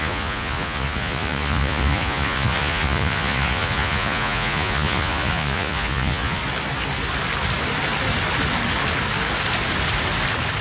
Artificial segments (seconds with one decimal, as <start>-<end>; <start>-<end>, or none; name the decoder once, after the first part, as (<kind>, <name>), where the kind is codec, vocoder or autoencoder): 0.0-6.4 (vocoder, Vocos)